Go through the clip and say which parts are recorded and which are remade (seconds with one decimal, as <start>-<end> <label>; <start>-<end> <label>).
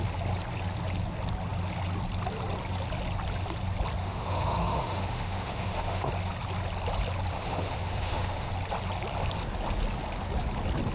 0.0-4.0 recorded; 4.0-6.1 remade; 6.1-7.3 recorded; 7.3-8.5 remade; 8.5-10.9 recorded